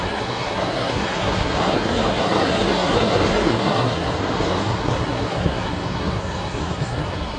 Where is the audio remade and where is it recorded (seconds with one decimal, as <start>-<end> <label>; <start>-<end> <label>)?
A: 0.0-7.4 remade